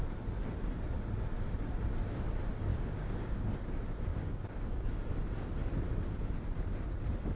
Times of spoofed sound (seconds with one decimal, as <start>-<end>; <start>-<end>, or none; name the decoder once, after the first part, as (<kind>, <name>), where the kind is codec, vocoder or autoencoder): 2.7-3.5 (codec, DAC); 4.1-5.1